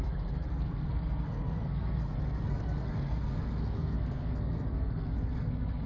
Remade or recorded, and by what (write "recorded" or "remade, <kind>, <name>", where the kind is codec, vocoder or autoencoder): remade, codec, SNAC